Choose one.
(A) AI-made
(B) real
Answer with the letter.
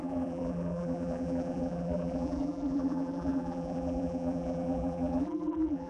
A